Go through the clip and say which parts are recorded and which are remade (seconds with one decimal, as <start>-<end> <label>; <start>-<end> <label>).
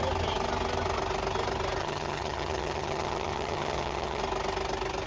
0.0-1.8 recorded; 1.8-4.2 remade; 4.2-5.1 recorded